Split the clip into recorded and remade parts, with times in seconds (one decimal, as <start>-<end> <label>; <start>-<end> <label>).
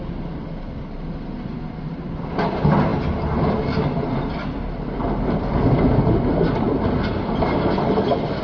0.0-8.4 recorded